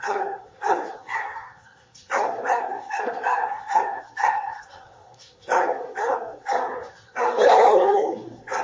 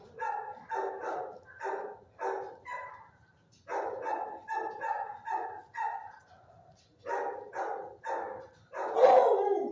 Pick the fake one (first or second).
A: first